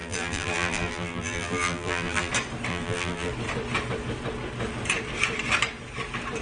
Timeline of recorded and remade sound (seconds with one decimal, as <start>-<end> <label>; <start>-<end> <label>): 0.0-2.3 remade; 2.3-2.7 recorded; 2.7-3.3 remade; 3.3-6.4 recorded